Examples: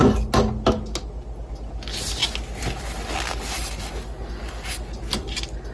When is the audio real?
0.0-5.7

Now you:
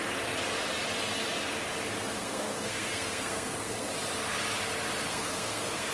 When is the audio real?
0.0-2.1; 3.9-5.1